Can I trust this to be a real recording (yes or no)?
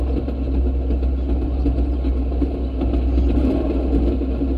yes